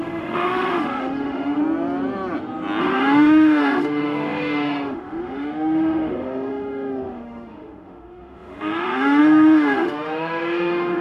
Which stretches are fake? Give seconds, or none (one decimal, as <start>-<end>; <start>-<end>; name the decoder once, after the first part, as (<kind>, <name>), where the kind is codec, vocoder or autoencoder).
0.0-1.6 (autoencoder, DAC-VAE); 2.8-11.0